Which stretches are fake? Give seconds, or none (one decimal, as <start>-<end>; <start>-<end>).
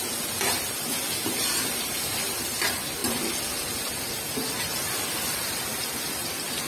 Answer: none